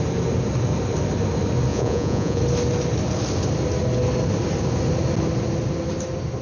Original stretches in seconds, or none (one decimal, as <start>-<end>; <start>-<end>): 0.0-1.7; 2.4-6.4